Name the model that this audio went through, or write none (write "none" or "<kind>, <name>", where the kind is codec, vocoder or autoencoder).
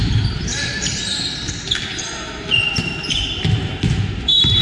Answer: vocoder, BigVGAN v2